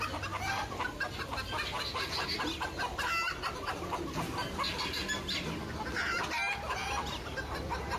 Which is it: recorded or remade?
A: recorded